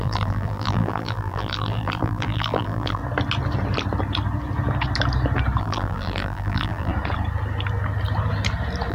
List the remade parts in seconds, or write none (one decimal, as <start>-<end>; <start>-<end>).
0.0-3.0; 5.6-6.9